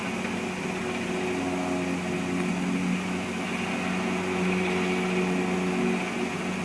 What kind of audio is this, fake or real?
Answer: real